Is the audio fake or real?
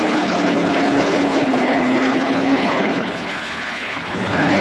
fake